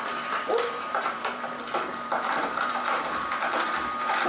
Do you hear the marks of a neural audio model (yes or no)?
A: yes